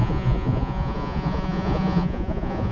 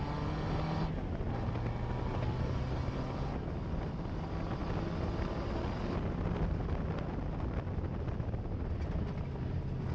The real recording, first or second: second